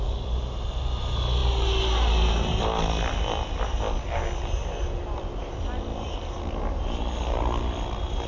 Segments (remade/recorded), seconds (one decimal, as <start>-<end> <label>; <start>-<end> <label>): 0.0-8.3 recorded